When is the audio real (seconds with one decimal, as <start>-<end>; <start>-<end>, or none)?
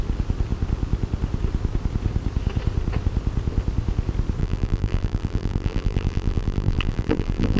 0.0-4.4